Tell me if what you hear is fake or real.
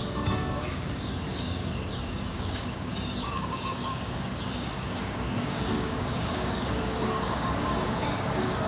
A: fake